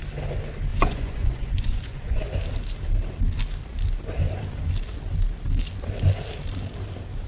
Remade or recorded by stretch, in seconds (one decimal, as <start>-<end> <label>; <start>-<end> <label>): 0.0-0.7 recorded; 0.7-2.2 remade; 2.2-7.3 recorded